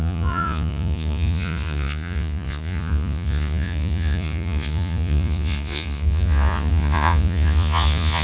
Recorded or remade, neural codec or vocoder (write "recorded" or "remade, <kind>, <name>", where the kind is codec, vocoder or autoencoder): remade, vocoder, Vocos